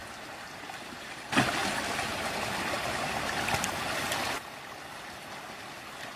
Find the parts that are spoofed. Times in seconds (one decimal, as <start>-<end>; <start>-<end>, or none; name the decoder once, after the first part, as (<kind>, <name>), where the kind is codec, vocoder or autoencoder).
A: 1.6-3.8 (vocoder, BigVGAN v2)